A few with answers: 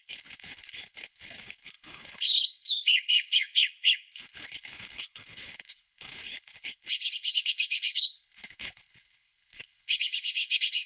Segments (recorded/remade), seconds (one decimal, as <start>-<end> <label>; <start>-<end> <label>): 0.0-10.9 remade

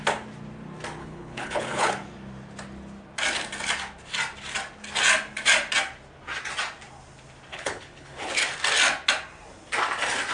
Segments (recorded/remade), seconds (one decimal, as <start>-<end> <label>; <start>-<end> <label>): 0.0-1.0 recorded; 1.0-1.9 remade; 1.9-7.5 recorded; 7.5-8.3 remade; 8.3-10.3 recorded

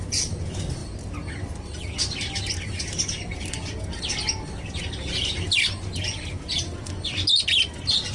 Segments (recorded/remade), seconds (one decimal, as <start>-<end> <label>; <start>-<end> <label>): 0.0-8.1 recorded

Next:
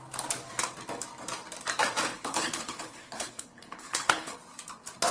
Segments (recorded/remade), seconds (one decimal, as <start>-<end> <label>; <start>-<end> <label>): 0.0-2.1 recorded; 2.1-4.4 remade; 4.4-5.1 recorded

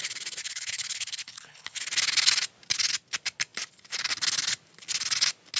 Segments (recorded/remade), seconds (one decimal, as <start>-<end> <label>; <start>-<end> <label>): 0.0-0.4 recorded; 0.4-1.8 remade; 1.8-5.6 recorded

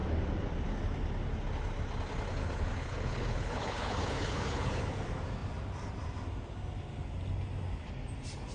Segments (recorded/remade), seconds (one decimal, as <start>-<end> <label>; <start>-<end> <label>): 0.0-2.4 recorded; 2.4-4.8 remade; 4.8-8.5 recorded